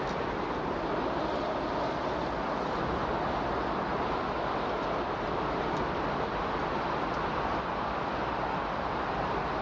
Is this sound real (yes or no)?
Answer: yes